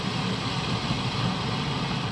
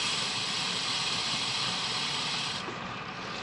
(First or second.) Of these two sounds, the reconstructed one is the second